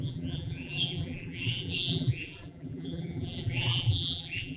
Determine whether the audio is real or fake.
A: fake